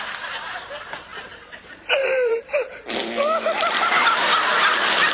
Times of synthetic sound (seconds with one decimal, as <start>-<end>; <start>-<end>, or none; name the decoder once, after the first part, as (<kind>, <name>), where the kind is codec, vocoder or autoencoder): 1.1-2.8 (vocoder, BigVGAN v2)